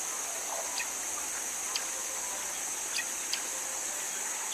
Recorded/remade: recorded